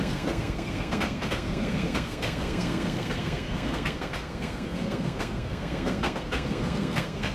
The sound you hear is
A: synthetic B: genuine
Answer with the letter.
A